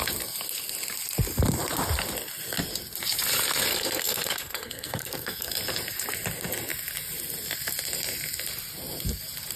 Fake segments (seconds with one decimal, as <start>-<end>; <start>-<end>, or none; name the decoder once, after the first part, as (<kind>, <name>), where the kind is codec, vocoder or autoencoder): 3.7-5.5 (codec, SNAC)